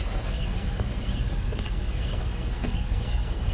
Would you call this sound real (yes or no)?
no